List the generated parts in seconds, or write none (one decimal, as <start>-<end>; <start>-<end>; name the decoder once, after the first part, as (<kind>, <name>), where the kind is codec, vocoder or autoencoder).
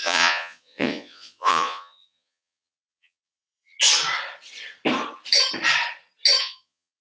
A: 0.0-3.7 (vocoder, Vocos); 6.4-7.0